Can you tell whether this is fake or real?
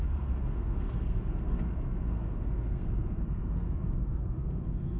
fake